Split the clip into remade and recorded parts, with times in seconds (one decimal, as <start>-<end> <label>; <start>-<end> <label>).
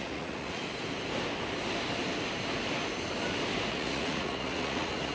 0.0-0.6 remade; 0.6-3.7 recorded; 3.7-5.1 remade